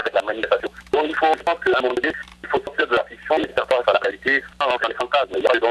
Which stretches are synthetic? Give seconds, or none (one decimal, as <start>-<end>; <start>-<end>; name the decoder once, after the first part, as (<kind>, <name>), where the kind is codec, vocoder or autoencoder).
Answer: 0.0-0.9 (autoencoder, DAC-VAE); 3.5-4.5